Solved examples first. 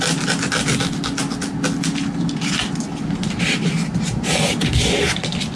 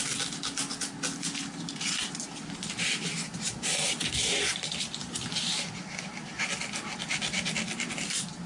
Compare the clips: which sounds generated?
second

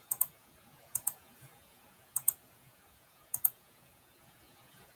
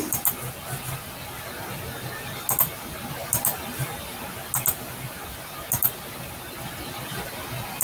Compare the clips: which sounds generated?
first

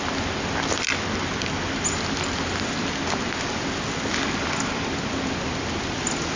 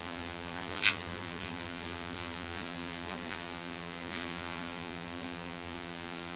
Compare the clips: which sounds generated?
second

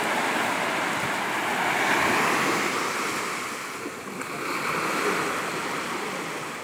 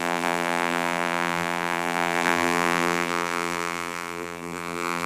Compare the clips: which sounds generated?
second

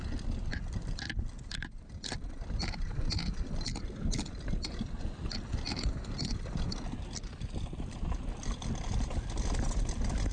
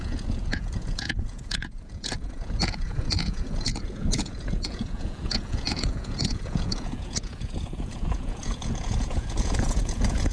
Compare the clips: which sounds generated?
second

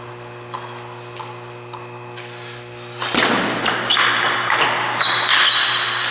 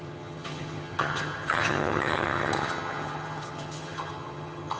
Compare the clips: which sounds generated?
second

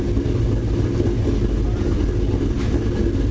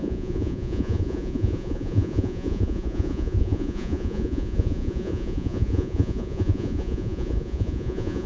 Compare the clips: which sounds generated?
second